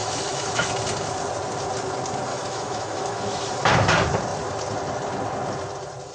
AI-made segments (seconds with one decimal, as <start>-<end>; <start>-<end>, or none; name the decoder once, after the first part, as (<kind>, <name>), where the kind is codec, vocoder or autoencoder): 0.0-0.7 (autoencoder, DAC-VAE); 2.3-3.5